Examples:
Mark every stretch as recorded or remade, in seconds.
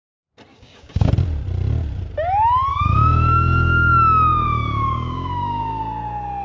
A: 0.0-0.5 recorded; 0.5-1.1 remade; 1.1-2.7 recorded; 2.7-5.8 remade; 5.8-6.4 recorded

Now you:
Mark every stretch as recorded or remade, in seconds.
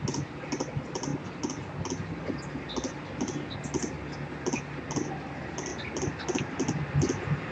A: 0.0-7.5 recorded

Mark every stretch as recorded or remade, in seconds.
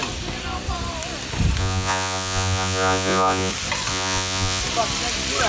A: 0.0-1.6 recorded; 1.6-3.5 remade; 3.5-3.9 recorded; 3.9-4.6 remade; 4.6-5.5 recorded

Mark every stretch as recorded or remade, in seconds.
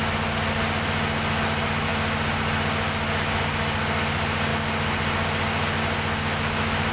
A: 0.0-6.9 recorded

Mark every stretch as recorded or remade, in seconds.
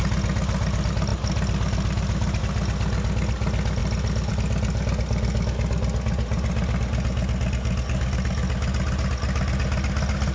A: 0.0-10.3 recorded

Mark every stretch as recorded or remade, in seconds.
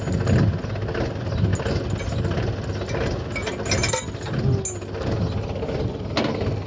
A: 0.0-6.7 recorded